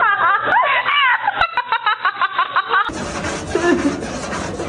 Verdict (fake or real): real